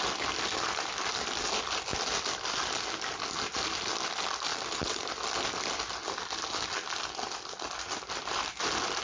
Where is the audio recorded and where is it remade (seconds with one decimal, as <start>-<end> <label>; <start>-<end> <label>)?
0.0-9.0 recorded